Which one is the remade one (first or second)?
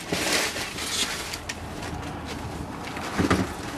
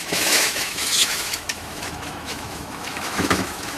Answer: second